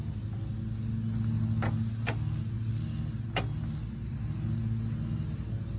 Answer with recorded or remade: recorded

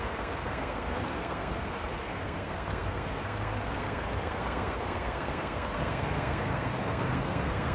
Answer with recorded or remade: remade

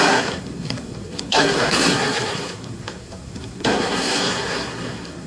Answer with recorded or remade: remade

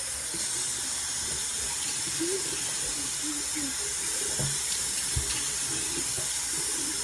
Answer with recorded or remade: recorded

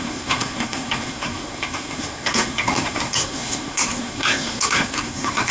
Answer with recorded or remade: remade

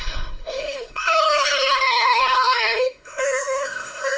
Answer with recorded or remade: remade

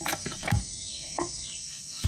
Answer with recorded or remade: remade